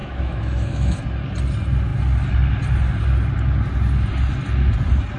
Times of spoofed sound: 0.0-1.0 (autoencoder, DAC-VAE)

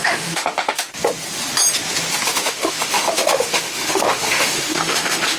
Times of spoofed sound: 0.0-0.9 (autoencoder, DAC-VAE); 2.2-5.4

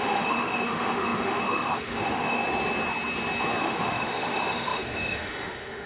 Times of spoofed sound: 0.0-2.4 (autoencoder, DAC-VAE); 3.6-5.9

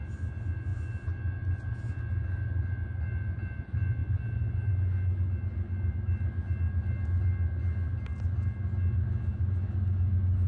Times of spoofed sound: none

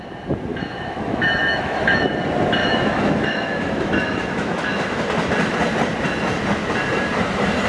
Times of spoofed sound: 0.5-2.1 (autoencoder, DAC-VAE); 2.6-5.0

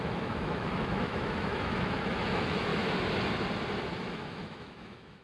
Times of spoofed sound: 0.0-2.7 (autoencoder, DAC-VAE); 4.1-5.2

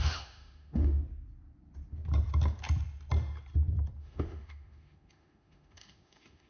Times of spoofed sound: 0.0-1.0 (autoencoder, DAC-VAE); 4.0-6.5

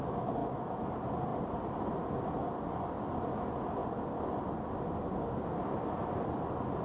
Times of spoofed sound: 0.4-0.9 (autoencoder, DAC-VAE)